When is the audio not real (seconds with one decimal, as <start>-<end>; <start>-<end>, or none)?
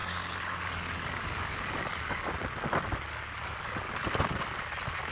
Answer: 0.0-2.3; 3.1-3.9